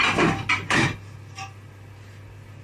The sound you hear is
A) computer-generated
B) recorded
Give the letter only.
B